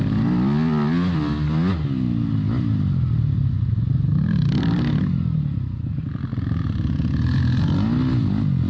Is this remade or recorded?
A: recorded